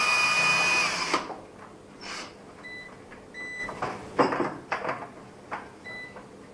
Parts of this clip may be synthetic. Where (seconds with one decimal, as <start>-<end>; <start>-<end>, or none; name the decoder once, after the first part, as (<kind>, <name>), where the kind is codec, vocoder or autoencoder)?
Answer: 3.6-4.2 (vocoder, BigVGAN v2)